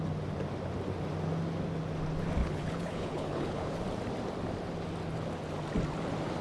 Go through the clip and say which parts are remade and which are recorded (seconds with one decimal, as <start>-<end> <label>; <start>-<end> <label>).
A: 0.0-2.4 recorded; 2.4-3.8 remade; 3.8-6.4 recorded